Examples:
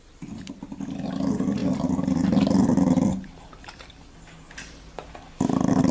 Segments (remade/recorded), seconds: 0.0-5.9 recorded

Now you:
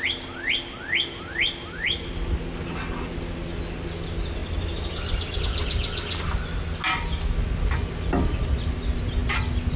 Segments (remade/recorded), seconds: 0.0-9.8 recorded

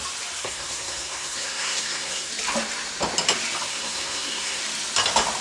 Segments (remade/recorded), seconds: 0.0-0.4 recorded; 0.4-2.3 remade; 2.3-3.7 recorded; 3.7-4.6 remade; 4.6-5.4 recorded

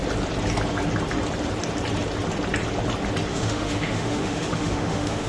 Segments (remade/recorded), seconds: 0.0-3.3 recorded; 3.3-5.3 remade

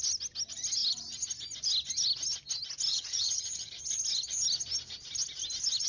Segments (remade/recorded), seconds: 0.0-2.9 recorded; 2.9-3.7 remade; 3.7-5.9 recorded